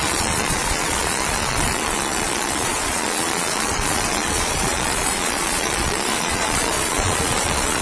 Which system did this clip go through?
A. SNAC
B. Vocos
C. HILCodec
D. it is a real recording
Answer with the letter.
B